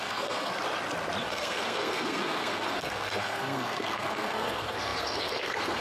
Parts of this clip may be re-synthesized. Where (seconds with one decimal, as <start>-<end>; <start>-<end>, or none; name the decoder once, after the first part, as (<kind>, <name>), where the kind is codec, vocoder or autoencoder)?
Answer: 0.0-0.5 (codec, SNAC); 1.2-5.8